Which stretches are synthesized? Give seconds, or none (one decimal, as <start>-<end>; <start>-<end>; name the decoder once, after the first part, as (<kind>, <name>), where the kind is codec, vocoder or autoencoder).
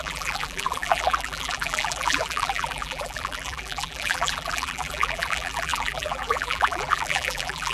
0.0-7.7 (vocoder, BigVGAN v2)